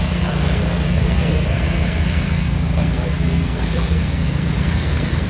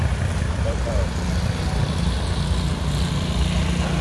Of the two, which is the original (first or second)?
second